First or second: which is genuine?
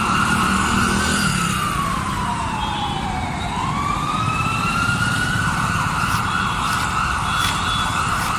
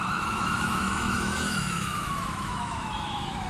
first